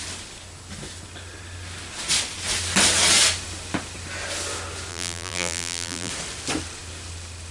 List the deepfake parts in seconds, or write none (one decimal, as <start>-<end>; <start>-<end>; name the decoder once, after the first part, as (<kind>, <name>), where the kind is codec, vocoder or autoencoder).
4.9-6.1 (vocoder, BigVGAN v2)